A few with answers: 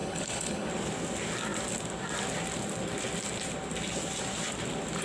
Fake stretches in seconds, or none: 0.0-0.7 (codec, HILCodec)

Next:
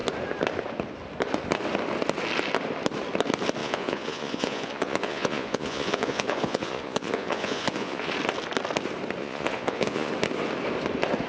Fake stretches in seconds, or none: 3.6-8.1 (vocoder, Vocos); 9.2-10.1

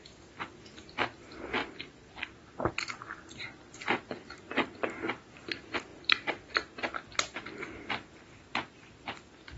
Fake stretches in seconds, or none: 5.9-6.5 (vocoder, BigVGAN v2)